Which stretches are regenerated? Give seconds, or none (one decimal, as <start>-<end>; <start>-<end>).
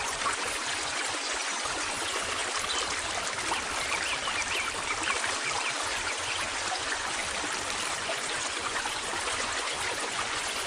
0.0-2.4; 5.7-7.2; 7.9-10.7